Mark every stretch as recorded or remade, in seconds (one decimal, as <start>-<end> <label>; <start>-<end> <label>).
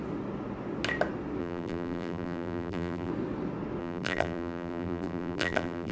0.0-1.4 recorded; 1.4-3.1 remade; 3.1-3.8 recorded; 3.8-5.9 remade